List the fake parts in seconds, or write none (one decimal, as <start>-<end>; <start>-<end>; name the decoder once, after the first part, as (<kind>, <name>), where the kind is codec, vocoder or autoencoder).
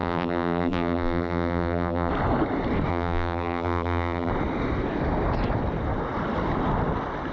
0.0-2.1 (vocoder, BigVGAN v2); 2.9-4.3